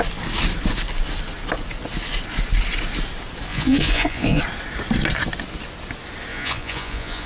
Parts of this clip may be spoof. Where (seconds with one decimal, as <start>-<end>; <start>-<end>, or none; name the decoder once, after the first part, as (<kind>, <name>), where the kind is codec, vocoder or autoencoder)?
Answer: 3.5-4.4 (vocoder, Vocos); 6.3-7.3